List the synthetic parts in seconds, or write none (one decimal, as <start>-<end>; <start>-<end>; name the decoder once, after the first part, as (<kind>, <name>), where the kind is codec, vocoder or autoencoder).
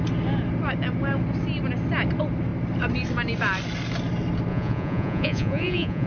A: 4.5-6.1 (vocoder, Vocos)